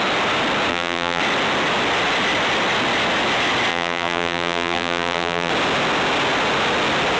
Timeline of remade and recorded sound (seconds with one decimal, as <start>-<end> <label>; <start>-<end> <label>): 0.0-0.7 recorded; 0.7-1.2 remade; 1.2-3.7 recorded; 3.7-5.5 remade; 5.5-7.2 recorded